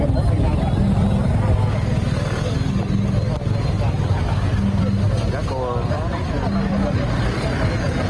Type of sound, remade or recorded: recorded